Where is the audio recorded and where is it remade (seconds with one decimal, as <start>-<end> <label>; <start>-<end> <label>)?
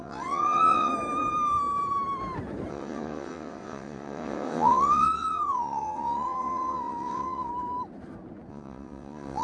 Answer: 0.0-0.9 remade; 0.9-2.7 recorded; 2.7-7.5 remade; 7.5-8.5 recorded; 8.5-9.4 remade